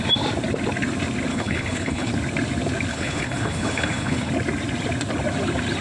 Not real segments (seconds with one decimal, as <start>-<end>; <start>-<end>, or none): 1.3-2.1; 2.9-4.3